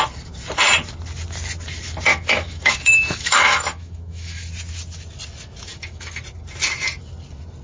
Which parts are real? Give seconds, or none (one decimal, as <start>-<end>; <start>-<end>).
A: 0.0-2.1; 4.5-5.7; 6.2-7.6